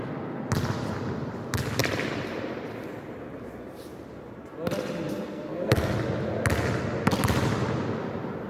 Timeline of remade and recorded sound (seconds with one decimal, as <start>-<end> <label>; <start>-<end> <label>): 0.0-5.3 recorded; 5.3-5.9 remade; 5.9-8.5 recorded